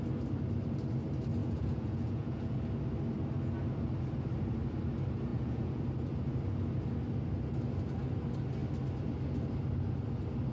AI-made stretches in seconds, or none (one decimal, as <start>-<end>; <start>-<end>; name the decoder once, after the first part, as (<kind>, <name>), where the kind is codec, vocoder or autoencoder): 1.4-2.6 (vocoder, Vocos); 5.3-5.8